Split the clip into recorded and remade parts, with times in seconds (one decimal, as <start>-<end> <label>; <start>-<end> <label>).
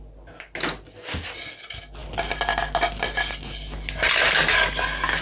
0.0-5.2 recorded